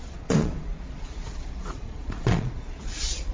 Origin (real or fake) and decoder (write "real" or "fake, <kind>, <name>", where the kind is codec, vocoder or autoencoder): fake, vocoder, Vocos